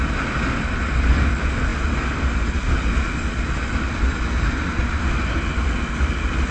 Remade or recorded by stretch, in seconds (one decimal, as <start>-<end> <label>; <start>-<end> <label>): 0.0-6.5 recorded